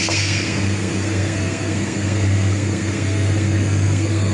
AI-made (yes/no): yes